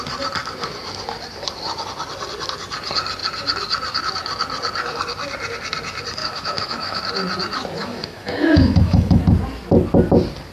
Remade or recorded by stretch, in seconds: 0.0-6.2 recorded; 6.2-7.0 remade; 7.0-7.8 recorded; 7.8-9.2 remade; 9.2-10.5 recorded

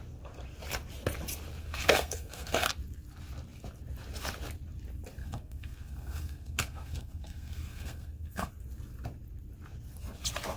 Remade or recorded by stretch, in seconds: 0.0-1.6 recorded; 1.6-2.7 remade; 2.7-5.2 recorded; 5.2-8.5 remade; 8.5-10.6 recorded

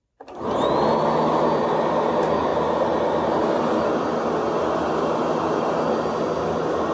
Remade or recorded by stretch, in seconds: 0.0-6.9 recorded